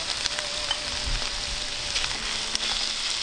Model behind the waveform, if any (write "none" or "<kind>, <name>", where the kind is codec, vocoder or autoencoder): none